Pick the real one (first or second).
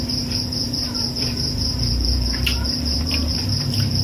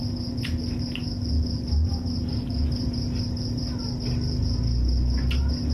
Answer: second